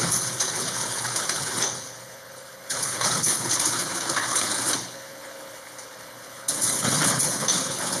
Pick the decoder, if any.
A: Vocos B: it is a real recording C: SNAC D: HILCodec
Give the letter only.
D